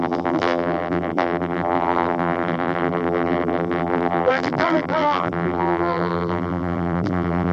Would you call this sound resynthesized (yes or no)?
yes